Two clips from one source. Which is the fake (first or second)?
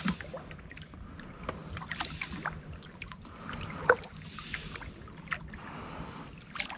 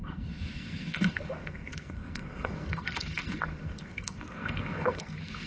second